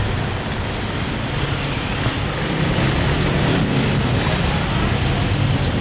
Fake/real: real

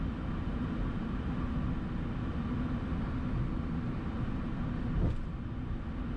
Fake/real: real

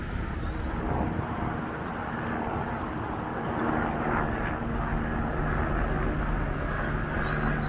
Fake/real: real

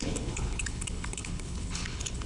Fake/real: fake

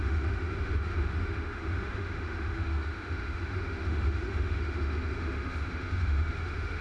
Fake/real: fake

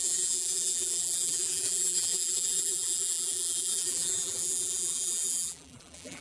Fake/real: fake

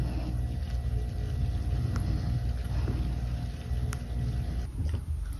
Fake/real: real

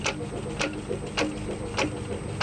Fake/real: real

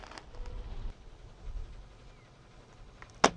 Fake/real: real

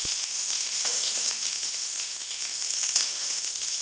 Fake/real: fake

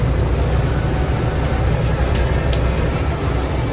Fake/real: real